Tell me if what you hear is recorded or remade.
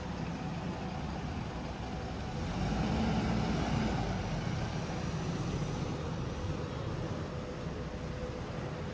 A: recorded